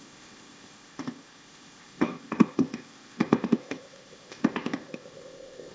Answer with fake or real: fake